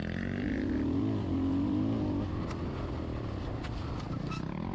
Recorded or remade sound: remade